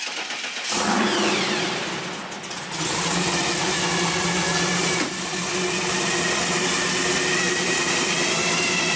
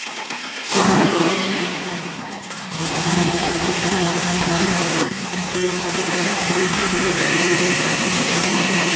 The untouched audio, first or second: first